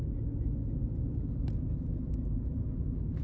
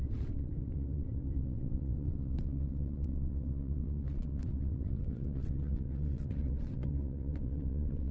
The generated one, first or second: second